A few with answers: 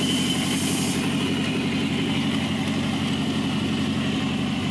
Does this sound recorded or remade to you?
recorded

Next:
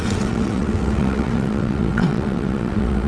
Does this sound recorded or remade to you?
remade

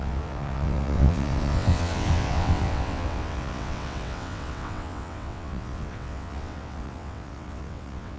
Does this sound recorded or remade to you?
remade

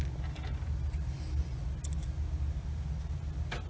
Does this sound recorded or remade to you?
recorded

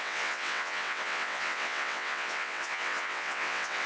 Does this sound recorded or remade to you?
remade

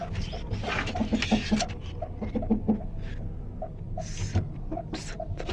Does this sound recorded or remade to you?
recorded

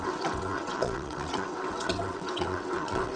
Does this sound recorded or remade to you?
remade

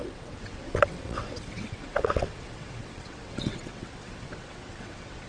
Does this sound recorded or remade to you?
remade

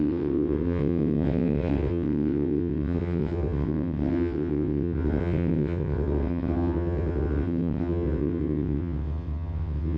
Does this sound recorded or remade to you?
remade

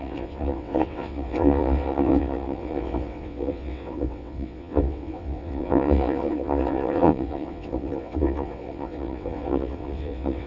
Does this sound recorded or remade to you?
remade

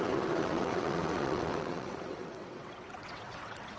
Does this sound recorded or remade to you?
remade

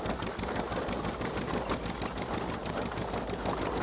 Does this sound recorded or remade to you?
recorded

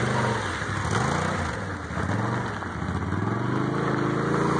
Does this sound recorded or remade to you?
recorded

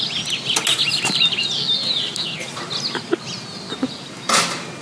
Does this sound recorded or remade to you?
recorded